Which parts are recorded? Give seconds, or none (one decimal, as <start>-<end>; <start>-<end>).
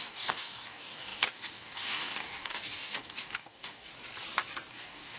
3.9-4.7